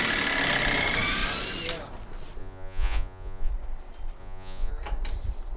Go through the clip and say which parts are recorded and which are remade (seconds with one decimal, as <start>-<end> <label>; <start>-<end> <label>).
0.0-2.4 recorded; 2.4-3.5 remade; 3.5-4.2 recorded; 4.2-4.7 remade; 4.7-5.6 recorded